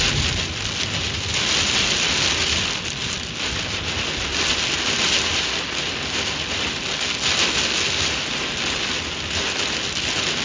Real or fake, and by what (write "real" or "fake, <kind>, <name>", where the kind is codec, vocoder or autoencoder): real